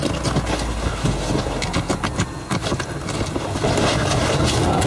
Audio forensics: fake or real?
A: real